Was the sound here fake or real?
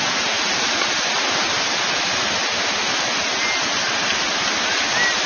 real